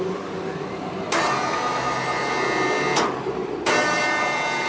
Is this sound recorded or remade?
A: recorded